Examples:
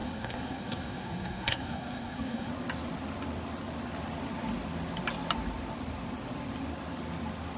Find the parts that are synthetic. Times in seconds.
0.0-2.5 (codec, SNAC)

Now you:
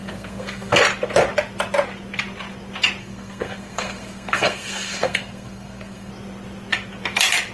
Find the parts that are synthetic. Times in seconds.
0.0-0.8 (codec, SNAC); 3.0-6.1

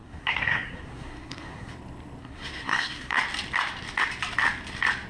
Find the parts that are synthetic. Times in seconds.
0.0-1.7 (codec, SNAC); 2.2-3.2

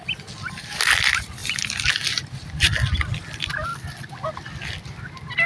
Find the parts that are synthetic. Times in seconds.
none

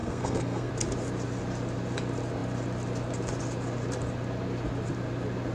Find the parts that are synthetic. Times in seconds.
0.0-0.7 (codec, SNAC)

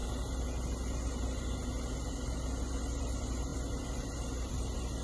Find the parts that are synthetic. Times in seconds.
none

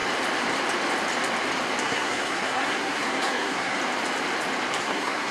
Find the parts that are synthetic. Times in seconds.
1.8-3.8 (codec, SNAC); 4.8-5.3

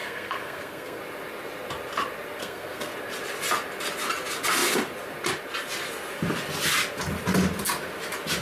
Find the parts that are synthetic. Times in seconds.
0.0-1.0 (codec, SNAC); 2.4-2.9